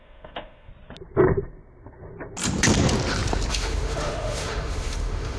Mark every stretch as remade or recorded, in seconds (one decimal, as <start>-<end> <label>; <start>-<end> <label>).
0.0-0.7 remade; 0.7-3.5 recorded; 3.5-5.4 remade